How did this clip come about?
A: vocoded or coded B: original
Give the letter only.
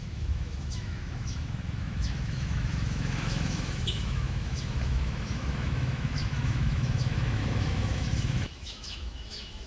A